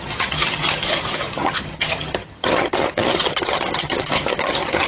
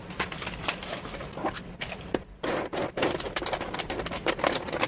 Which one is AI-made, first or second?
first